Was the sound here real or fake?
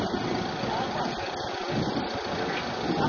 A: real